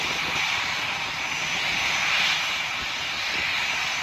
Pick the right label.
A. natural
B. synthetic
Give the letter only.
A